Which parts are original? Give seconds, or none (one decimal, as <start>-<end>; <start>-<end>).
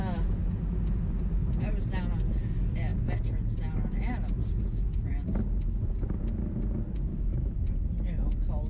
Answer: 0.0-7.1; 7.6-8.7